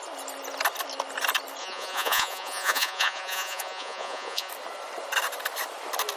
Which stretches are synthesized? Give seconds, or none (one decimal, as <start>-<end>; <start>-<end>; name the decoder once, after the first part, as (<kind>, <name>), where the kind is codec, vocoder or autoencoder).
1.6-4.5 (vocoder, Vocos)